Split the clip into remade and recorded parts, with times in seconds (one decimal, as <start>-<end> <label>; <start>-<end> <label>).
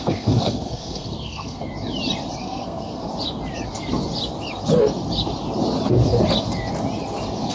0.0-1.7 remade; 1.7-2.4 recorded; 2.4-3.1 remade; 3.1-7.5 recorded